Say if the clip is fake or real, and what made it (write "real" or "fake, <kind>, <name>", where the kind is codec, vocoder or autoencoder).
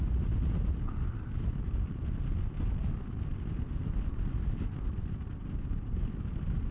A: real